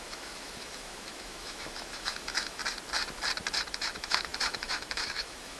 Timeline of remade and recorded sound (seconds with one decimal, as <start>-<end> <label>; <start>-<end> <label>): 0.0-2.6 remade; 2.6-3.7 recorded; 3.7-5.6 remade